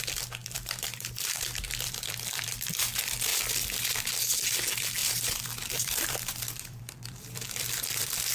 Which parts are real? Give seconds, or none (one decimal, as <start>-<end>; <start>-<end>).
3.3-4.5